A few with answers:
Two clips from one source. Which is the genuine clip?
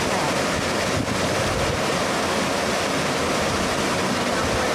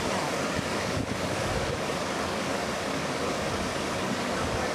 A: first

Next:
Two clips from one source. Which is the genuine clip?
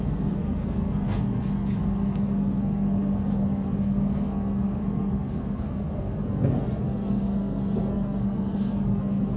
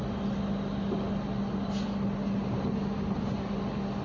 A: second